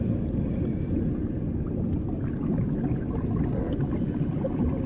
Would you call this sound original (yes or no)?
yes